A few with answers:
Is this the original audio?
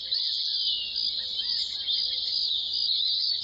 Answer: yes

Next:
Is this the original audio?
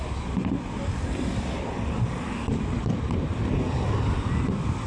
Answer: yes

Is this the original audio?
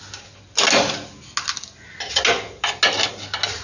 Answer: yes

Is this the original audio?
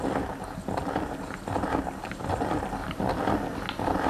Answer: yes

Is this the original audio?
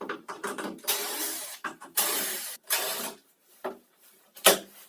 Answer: no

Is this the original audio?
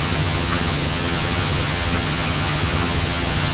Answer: no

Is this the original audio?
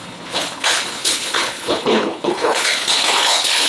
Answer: no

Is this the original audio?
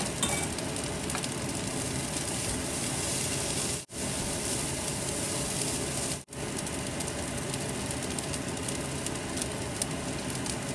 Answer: yes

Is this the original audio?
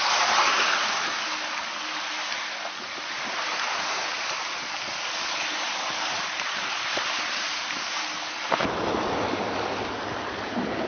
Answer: yes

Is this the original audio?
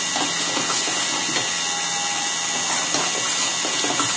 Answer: yes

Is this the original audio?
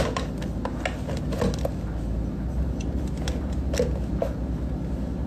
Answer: yes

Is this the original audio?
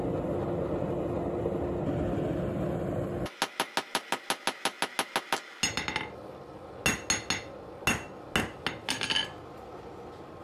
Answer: yes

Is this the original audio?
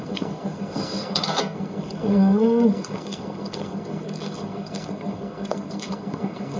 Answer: no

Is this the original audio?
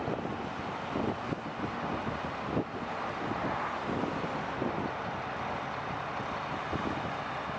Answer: yes